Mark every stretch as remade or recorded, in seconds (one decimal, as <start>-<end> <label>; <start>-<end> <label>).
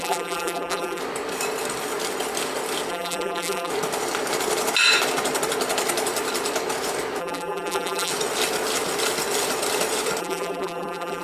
0.0-1.0 remade; 1.0-2.9 recorded; 2.9-3.7 remade; 3.7-7.2 recorded; 7.2-8.1 remade; 8.1-10.2 recorded; 10.2-11.2 remade